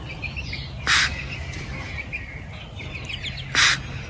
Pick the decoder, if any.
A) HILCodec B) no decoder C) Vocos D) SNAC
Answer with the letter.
B